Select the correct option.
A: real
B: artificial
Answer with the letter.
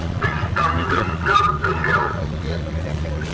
B